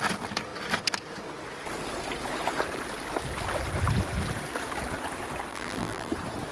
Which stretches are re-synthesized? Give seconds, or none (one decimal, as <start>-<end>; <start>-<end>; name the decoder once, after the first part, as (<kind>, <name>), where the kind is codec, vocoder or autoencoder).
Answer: 5.5-6.1 (vocoder, BigVGAN v2)